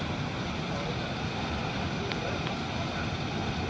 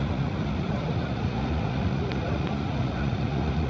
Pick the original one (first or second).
first